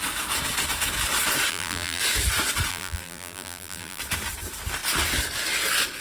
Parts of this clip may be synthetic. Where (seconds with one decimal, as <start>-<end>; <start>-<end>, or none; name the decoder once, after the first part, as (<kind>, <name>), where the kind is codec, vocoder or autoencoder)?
1.5-2.0 (vocoder, BigVGAN v2); 2.7-4.0